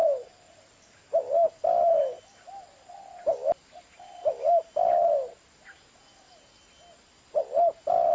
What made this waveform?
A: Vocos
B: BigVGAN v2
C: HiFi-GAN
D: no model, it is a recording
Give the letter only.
D